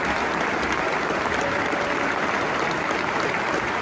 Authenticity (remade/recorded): recorded